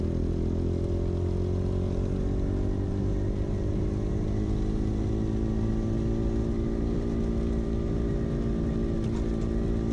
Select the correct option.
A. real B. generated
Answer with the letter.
A